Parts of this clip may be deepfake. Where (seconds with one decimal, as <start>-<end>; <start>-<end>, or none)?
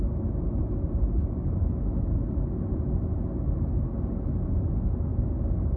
none